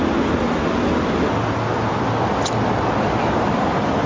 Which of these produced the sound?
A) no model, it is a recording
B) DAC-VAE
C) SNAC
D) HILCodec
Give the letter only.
A